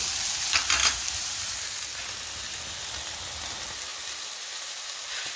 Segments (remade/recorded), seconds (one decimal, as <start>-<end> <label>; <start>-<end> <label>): 0.0-0.8 recorded; 0.8-1.6 remade; 1.6-5.4 recorded

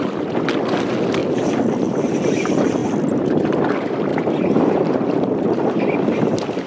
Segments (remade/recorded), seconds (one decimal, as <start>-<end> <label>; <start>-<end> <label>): 0.0-1.2 recorded; 1.2-2.1 remade; 2.1-2.8 recorded; 2.8-3.6 remade; 3.6-4.1 recorded; 4.1-5.8 remade; 5.8-6.7 recorded

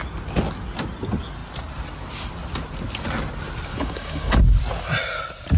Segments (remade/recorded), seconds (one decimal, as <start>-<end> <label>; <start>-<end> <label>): 0.0-3.7 recorded; 3.7-4.4 remade; 4.4-5.6 recorded

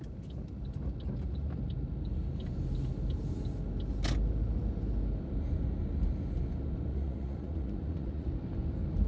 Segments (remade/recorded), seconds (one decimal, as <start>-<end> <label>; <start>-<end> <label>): 0.0-6.9 recorded; 6.9-8.3 remade; 8.3-9.1 recorded

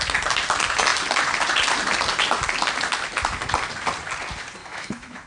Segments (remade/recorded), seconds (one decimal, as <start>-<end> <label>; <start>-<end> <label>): 0.0-4.6 recorded; 4.6-5.3 remade